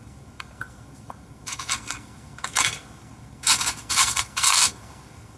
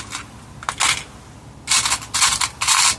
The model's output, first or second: first